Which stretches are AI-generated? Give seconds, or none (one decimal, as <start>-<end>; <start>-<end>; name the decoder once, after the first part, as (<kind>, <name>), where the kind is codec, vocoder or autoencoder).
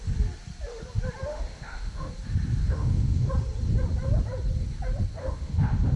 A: 1.3-2.1 (autoencoder, DAC-VAE); 2.6-3.3; 5.2-6.0